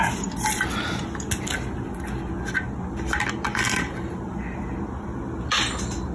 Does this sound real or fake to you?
real